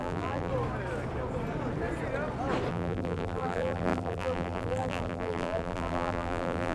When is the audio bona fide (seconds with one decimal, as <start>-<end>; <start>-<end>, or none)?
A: 0.5-2.7